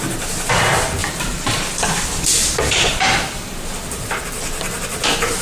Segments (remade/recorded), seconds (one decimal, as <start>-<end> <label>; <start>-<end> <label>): 0.0-1.0 recorded; 1.0-4.2 remade; 4.2-5.4 recorded

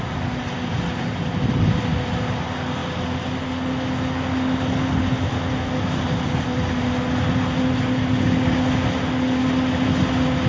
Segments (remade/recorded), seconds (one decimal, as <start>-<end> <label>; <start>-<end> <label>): 0.0-10.5 recorded